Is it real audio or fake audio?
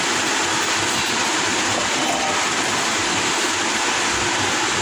real